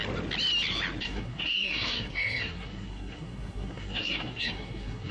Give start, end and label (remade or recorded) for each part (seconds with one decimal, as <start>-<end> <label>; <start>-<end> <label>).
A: 0.0-1.0 recorded; 1.0-5.1 remade